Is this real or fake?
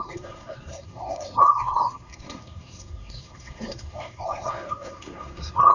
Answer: fake